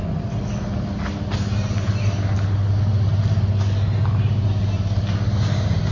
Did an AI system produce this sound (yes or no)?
no